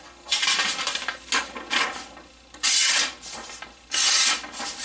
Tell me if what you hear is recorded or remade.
recorded